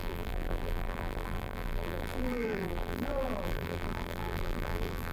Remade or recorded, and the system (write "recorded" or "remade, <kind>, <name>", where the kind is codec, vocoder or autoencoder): remade, vocoder, BigVGAN v2